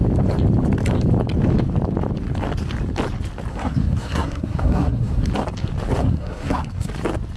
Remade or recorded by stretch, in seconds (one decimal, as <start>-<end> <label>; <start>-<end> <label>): 0.0-3.5 recorded; 3.5-5.3 remade; 5.3-6.0 recorded; 6.0-6.9 remade; 6.9-7.4 recorded